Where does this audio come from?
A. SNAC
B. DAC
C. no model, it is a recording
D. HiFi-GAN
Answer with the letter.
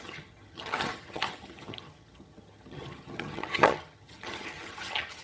D